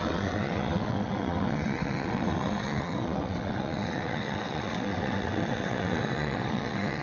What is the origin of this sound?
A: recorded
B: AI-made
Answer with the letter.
B